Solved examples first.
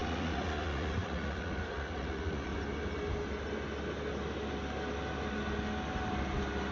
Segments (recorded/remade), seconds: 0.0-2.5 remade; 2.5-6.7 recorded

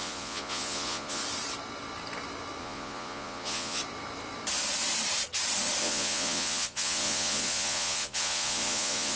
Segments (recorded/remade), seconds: 0.0-1.2 remade; 1.2-2.6 recorded; 2.6-3.8 remade; 3.8-5.8 recorded; 5.8-9.2 remade

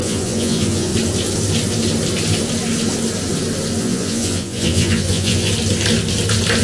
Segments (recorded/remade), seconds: 0.0-0.9 remade; 0.9-3.8 recorded; 3.8-5.5 remade; 5.5-6.6 recorded

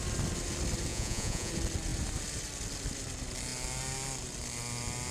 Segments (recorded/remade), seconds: 0.0-0.9 recorded; 0.9-1.5 remade; 1.5-5.1 recorded

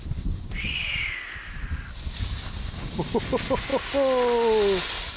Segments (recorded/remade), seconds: 0.0-5.2 recorded